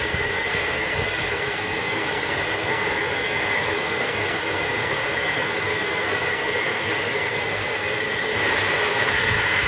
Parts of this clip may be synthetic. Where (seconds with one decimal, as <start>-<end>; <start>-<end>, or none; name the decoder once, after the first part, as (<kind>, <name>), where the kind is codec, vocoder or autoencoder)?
0.0-8.3 (codec, SNAC); 8.9-9.7